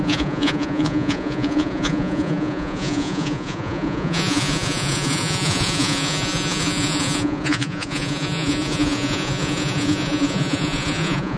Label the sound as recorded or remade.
remade